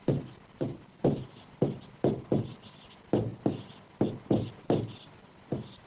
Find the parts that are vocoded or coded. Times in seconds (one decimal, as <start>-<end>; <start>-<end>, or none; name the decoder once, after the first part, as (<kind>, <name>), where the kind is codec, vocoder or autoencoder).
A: none